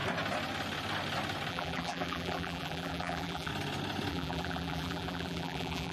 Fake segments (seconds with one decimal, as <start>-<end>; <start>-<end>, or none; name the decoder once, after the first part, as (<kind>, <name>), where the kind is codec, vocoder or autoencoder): 1.5-3.5 (vocoder, BigVGAN v2); 4.1-5.9